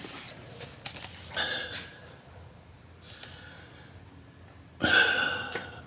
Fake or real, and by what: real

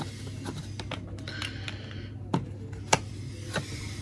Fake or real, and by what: real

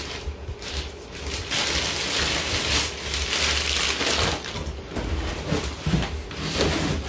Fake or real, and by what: real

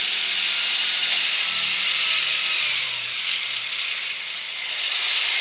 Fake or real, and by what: real